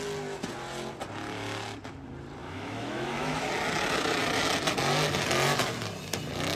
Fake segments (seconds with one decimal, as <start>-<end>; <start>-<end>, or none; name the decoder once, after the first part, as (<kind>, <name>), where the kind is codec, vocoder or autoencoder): 2.4-3.5 (autoencoder, DAC-VAE)